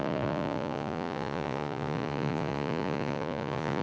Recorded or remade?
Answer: remade